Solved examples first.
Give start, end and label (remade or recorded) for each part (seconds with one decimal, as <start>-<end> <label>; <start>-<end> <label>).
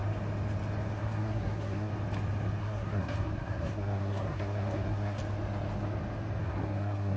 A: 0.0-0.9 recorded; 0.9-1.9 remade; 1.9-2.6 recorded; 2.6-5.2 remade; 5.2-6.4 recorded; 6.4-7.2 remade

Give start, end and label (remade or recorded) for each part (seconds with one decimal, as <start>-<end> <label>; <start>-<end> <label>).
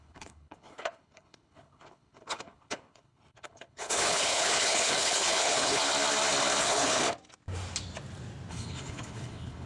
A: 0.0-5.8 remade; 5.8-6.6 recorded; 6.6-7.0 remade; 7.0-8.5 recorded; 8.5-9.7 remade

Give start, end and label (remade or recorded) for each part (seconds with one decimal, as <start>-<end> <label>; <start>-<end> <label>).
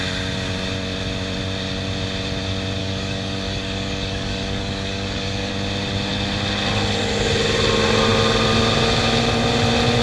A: 0.0-2.8 recorded; 2.8-5.5 remade; 5.5-10.0 recorded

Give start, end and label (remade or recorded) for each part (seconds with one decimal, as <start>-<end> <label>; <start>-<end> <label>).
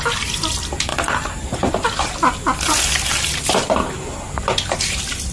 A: 0.0-5.3 recorded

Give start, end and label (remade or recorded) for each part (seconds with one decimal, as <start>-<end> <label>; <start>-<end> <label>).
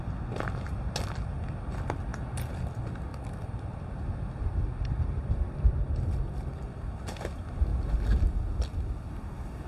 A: 0.0-3.1 recorded; 3.1-6.9 remade; 6.9-7.7 recorded; 7.7-9.1 remade; 9.1-9.7 recorded